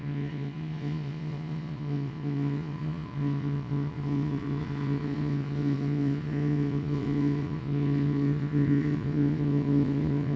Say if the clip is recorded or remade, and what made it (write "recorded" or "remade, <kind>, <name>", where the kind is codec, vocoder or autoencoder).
remade, vocoder, Vocos